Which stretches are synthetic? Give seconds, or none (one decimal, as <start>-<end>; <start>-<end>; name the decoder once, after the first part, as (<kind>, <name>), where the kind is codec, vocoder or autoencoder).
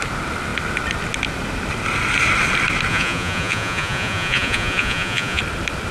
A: 2.9-5.4 (vocoder, Vocos)